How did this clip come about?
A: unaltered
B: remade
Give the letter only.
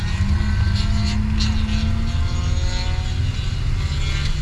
A